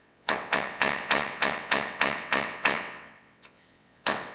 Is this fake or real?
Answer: fake